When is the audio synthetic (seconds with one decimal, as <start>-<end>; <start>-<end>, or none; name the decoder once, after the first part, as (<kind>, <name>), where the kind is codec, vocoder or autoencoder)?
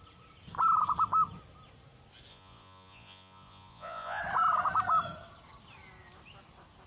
2.3-4.2 (vocoder, Vocos)